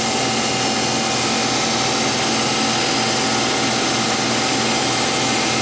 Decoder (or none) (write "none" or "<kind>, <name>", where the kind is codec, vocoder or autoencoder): none